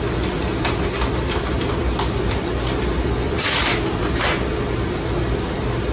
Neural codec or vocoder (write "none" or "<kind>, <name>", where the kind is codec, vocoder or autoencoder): none